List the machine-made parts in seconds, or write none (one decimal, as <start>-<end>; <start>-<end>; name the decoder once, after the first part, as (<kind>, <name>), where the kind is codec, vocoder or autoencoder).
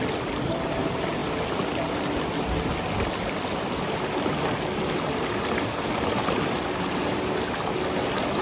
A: none